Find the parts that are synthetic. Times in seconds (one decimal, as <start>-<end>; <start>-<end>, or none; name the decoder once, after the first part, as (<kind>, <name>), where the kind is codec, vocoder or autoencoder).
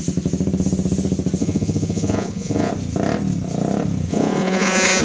1.4-2.7 (vocoder, Vocos); 4.1-5.0